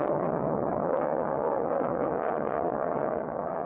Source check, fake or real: fake